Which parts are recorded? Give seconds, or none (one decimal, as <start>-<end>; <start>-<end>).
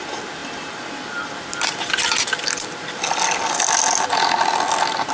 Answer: 0.0-0.4; 3.5-5.1